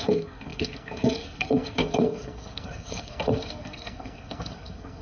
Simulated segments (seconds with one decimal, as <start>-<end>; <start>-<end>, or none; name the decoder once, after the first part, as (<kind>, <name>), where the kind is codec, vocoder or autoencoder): 0.0-5.0 (codec, SNAC)